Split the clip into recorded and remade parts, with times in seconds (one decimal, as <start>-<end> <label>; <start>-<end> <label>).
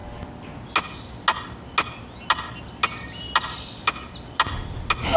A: 0.0-5.2 recorded